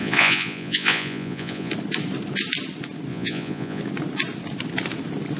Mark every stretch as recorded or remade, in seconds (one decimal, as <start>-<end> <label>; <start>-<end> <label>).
0.0-1.7 remade; 1.7-3.1 recorded; 3.1-3.8 remade; 3.8-5.4 recorded